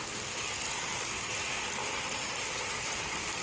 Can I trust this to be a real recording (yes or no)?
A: yes